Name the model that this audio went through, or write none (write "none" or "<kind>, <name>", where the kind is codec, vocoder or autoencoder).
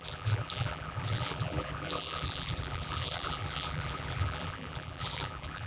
vocoder, BigVGAN v2